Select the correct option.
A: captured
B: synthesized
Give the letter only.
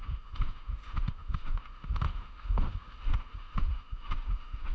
B